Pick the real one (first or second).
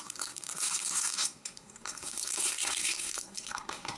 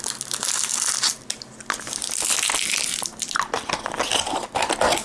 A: second